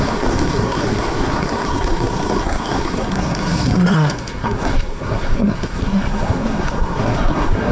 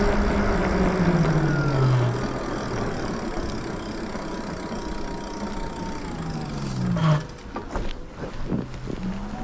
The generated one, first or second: first